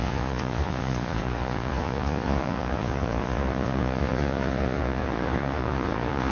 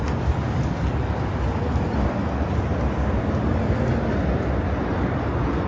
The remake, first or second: first